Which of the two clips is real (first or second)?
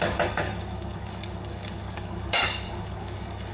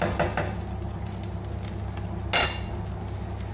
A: second